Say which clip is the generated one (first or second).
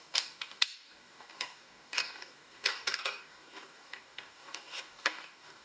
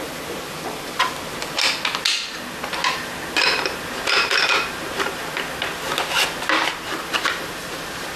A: first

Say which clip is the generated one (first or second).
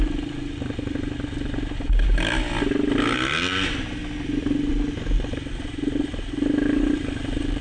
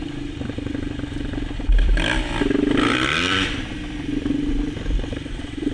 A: second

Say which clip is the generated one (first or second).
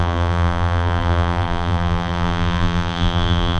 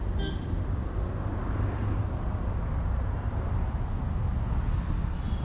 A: first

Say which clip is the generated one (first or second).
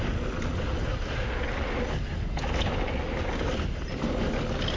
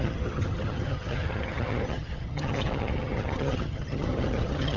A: second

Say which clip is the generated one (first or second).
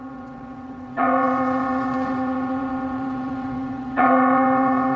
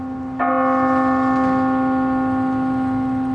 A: first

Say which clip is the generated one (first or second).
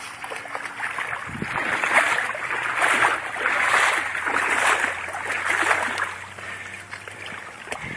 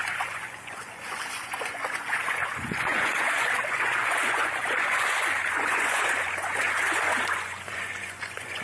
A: second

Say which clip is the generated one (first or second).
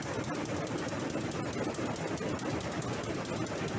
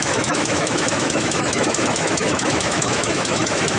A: second